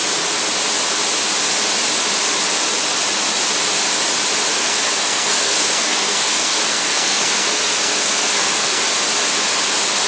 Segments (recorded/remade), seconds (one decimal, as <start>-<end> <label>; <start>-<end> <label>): 0.0-4.5 recorded; 4.5-8.8 remade; 8.8-10.1 recorded